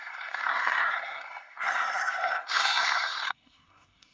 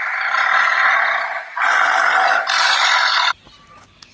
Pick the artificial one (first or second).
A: first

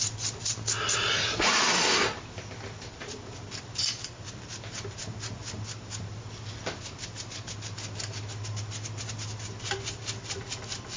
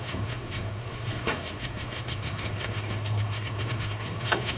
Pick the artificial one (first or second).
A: second